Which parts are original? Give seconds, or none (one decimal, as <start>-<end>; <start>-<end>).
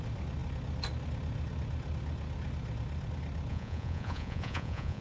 0.0-3.5